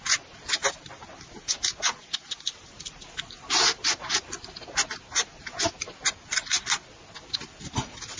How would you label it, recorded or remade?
recorded